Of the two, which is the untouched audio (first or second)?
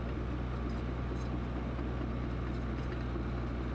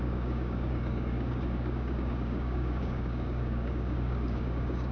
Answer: first